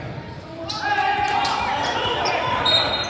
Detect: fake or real fake